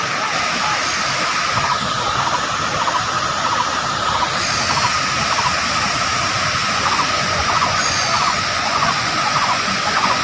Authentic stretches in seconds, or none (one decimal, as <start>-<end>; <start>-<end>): 0.0-6.6